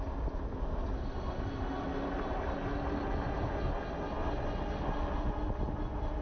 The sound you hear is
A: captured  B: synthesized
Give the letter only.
A